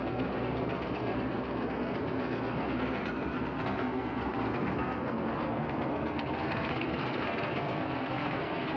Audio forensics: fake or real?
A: fake